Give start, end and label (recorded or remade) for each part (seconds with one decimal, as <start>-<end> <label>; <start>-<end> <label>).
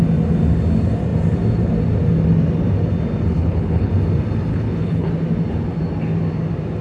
0.0-3.3 recorded; 3.3-3.9 remade; 3.9-4.5 recorded; 4.5-5.1 remade; 5.1-6.8 recorded